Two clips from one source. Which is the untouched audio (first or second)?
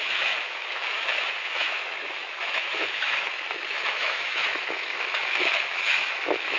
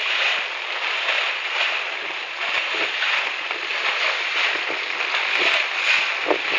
second